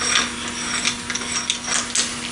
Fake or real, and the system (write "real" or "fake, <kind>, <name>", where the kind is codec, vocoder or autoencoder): real